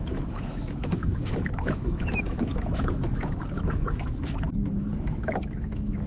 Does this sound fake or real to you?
fake